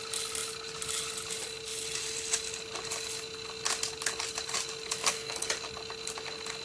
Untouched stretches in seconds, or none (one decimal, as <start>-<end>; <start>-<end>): 0.0-5.0; 5.5-6.6